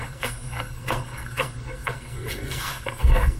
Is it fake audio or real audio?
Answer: fake